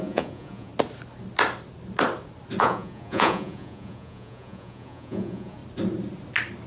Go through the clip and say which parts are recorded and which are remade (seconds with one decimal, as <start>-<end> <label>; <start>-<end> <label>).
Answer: 0.0-0.7 remade; 0.7-2.6 recorded; 2.6-5.6 remade; 5.6-6.7 recorded